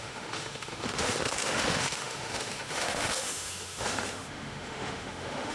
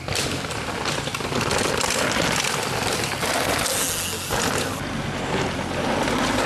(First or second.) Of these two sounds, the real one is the second